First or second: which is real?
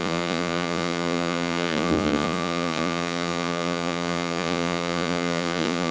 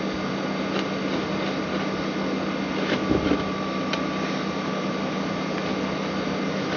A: second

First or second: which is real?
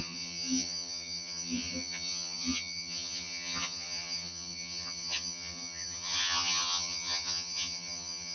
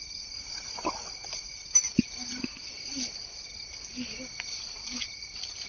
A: second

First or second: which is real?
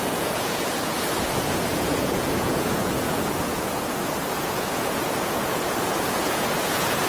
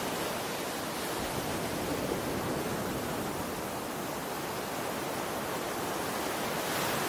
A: second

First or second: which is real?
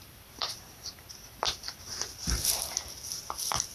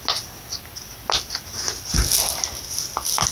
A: second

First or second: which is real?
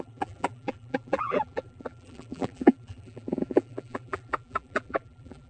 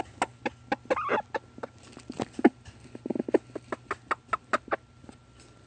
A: second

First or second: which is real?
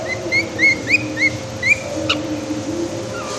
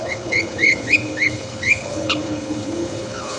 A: first